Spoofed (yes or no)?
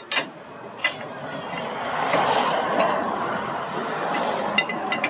no